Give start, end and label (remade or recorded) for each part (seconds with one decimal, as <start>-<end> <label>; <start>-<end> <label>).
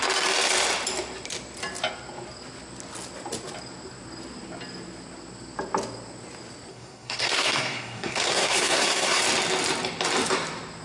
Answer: 0.0-6.7 recorded; 6.7-9.2 remade; 9.2-10.8 recorded